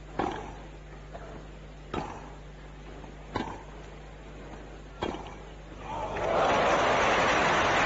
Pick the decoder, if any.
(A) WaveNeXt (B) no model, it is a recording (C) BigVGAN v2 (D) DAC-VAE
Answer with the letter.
B